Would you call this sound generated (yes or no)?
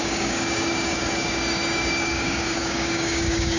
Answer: yes